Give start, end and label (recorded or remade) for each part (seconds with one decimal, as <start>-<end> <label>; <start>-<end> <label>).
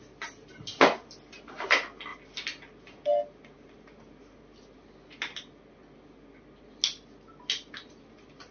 0.0-8.5 recorded